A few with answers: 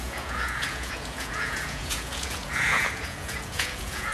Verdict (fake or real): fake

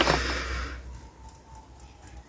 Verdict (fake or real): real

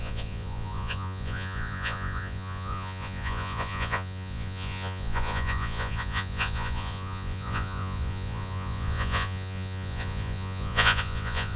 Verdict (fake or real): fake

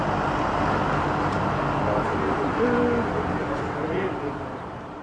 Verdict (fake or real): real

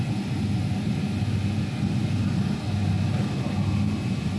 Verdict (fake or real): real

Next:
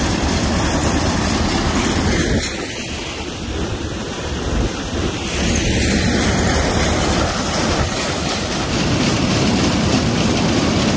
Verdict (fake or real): real